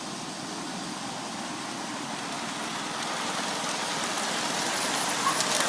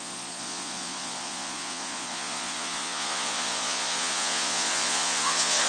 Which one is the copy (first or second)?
second